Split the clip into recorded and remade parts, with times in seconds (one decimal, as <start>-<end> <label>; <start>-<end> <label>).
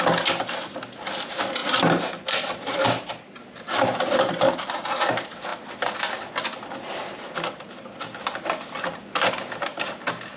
0.0-10.4 recorded